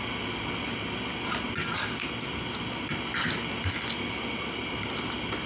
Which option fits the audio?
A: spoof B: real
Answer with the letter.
B